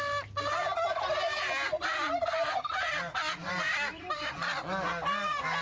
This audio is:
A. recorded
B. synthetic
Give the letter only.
A